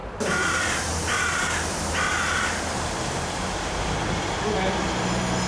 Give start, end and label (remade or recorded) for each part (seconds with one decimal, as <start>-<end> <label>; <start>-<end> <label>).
0.0-2.3 recorded; 2.3-5.0 remade; 5.0-5.5 recorded